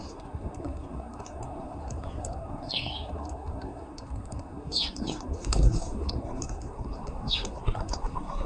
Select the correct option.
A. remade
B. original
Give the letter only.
A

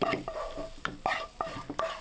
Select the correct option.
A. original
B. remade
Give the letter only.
B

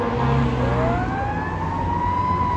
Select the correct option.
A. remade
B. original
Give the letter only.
B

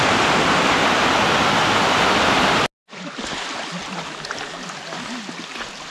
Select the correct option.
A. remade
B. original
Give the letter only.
B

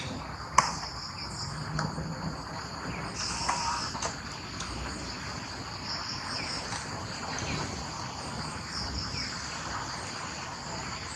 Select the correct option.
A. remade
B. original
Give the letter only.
B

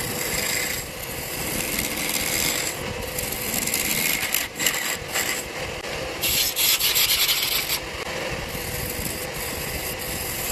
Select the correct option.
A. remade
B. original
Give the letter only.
B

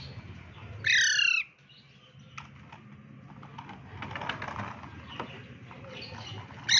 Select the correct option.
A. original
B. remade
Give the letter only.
A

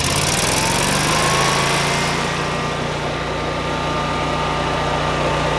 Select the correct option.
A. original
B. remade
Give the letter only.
A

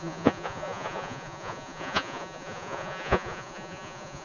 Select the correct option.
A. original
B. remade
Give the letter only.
B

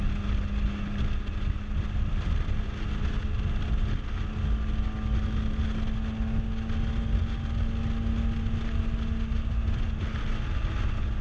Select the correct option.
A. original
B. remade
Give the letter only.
A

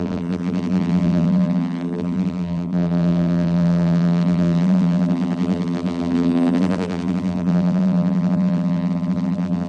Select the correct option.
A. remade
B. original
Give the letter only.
A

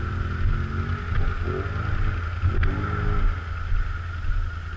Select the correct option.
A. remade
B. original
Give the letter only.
B